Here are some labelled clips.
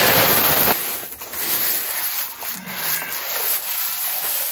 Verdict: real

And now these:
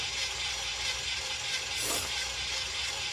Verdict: fake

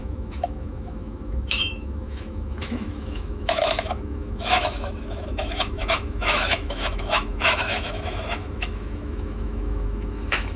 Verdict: fake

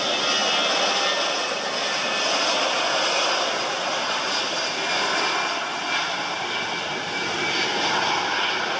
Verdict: real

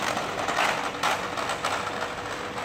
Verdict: real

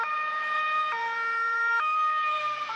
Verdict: fake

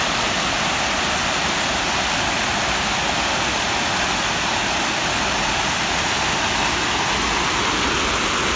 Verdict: real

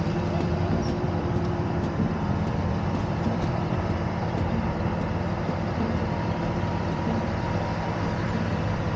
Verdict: fake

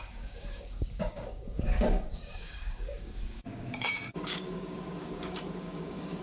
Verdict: fake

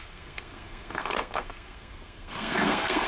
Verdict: fake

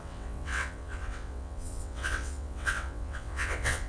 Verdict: fake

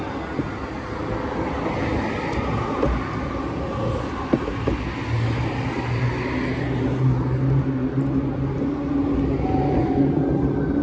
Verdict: real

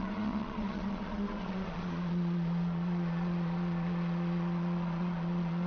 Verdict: fake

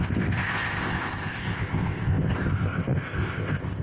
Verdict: fake